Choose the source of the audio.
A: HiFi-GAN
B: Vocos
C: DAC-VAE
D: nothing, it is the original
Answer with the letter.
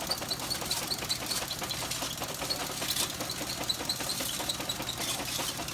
D